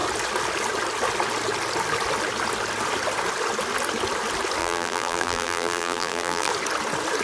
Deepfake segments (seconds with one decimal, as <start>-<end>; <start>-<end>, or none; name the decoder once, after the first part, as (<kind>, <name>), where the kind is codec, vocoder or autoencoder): 4.6-6.5 (vocoder, BigVGAN v2)